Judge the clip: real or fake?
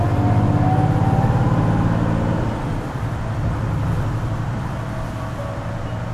real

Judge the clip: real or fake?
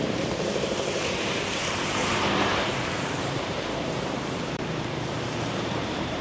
fake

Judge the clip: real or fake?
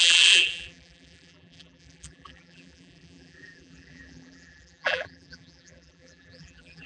fake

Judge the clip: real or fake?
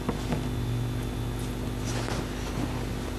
real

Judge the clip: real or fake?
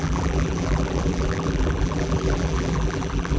fake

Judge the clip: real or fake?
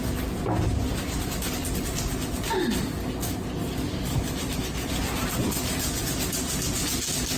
real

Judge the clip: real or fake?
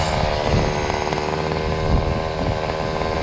real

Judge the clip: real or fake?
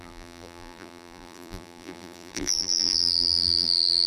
fake